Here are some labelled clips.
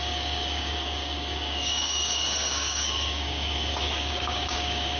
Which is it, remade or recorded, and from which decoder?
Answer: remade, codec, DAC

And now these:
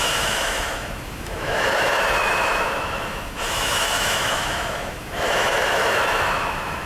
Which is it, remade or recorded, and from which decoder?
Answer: remade, autoencoder, DAC-VAE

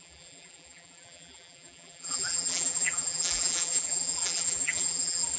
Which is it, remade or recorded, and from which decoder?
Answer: remade, vocoder, BigVGAN v2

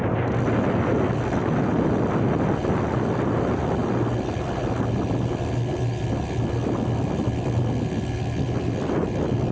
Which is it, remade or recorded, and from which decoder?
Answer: recorded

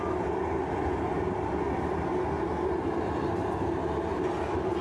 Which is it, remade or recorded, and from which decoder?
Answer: recorded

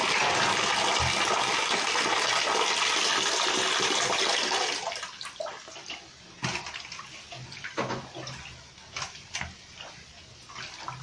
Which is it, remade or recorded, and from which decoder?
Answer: recorded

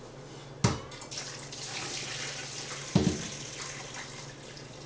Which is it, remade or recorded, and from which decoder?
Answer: recorded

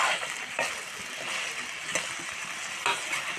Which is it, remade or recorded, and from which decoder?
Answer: recorded